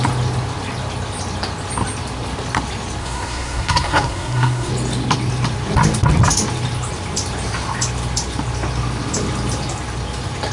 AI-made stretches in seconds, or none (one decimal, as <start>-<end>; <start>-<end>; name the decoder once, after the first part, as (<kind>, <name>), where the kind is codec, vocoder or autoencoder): 3.0-4.7 (codec, SNAC)